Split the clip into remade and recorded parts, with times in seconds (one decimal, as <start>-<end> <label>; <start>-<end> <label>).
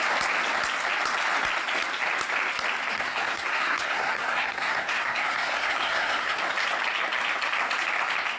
0.0-2.9 recorded; 2.9-6.4 remade; 6.4-8.4 recorded